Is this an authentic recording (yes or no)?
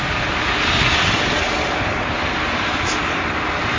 yes